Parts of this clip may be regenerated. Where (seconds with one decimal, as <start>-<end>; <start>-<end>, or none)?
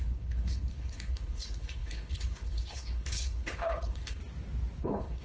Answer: 0.0-4.2; 4.8-5.2